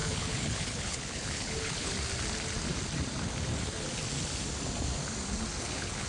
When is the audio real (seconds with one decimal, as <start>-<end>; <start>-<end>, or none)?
1.9-5.6